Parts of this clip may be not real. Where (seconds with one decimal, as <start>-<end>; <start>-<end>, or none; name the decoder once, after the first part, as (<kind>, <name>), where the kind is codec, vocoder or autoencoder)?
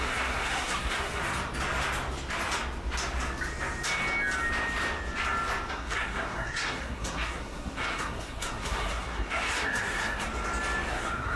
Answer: 0.0-1.2 (codec, SNAC); 5.7-10.3; 10.9-11.4